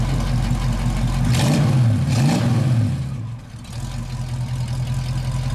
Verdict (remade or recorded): recorded